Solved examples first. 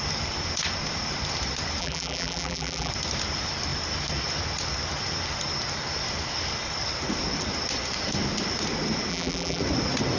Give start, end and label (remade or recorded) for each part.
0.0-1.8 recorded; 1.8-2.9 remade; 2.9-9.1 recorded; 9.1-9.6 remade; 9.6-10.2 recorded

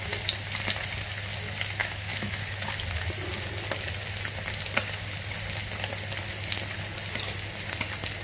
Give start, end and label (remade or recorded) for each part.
0.0-1.8 recorded; 1.8-2.6 remade; 2.6-8.2 recorded

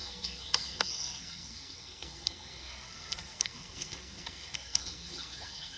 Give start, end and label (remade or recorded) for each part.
0.0-5.8 remade

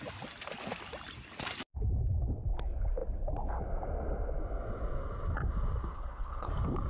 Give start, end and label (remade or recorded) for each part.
0.0-5.9 recorded; 5.9-6.5 remade; 6.5-6.9 recorded

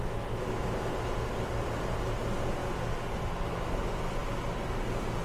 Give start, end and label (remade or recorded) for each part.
0.0-0.9 remade; 0.9-5.2 recorded

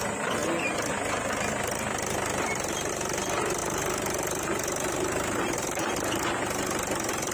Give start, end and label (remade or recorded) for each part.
0.0-3.6 recorded; 3.6-5.9 remade; 5.9-7.3 recorded

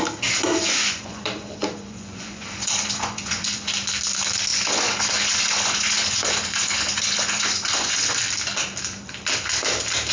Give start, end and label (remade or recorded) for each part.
0.0-0.6 recorded; 0.6-3.7 remade; 3.7-4.5 recorded; 4.5-8.2 remade; 8.2-10.1 recorded